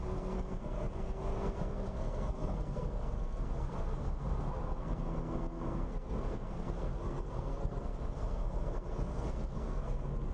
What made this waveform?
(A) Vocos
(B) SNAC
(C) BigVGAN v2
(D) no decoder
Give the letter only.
B